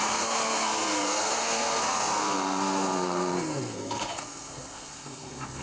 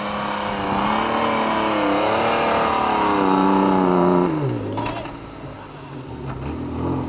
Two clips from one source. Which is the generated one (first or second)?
first